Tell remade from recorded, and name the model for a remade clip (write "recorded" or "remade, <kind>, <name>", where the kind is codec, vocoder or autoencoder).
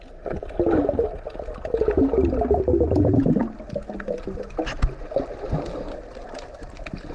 recorded